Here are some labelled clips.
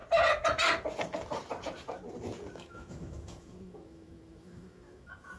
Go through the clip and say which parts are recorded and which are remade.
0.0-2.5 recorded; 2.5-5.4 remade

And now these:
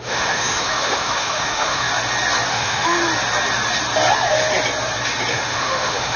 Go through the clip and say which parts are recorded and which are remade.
0.0-1.9 remade; 1.9-2.5 recorded; 2.5-3.0 remade; 3.0-5.3 recorded; 5.3-6.2 remade

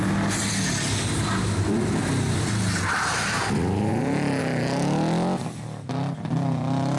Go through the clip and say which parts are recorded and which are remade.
0.0-7.0 recorded

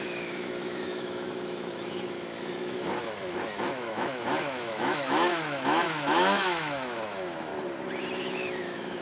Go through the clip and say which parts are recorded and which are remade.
0.0-7.5 remade; 7.5-8.2 recorded; 8.2-9.0 remade

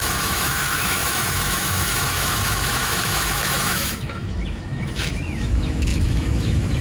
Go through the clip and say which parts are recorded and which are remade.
0.0-6.8 remade

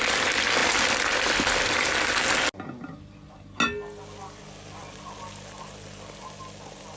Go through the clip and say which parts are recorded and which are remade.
0.0-7.0 recorded